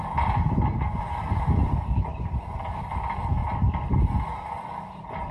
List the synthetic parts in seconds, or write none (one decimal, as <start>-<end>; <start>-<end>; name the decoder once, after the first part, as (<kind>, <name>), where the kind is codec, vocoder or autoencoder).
none